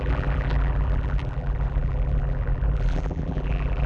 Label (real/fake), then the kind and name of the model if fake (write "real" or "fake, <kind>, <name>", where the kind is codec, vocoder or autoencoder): fake, vocoder, BigVGAN v2